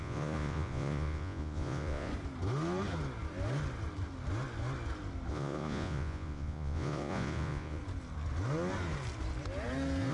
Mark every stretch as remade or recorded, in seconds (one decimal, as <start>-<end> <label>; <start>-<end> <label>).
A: 0.0-2.1 remade; 2.1-5.3 recorded; 5.3-7.8 remade; 7.8-10.1 recorded